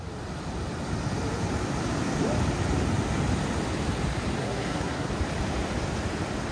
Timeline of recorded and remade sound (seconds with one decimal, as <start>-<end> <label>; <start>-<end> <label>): 0.0-4.4 recorded; 4.4-5.1 remade; 5.1-6.5 recorded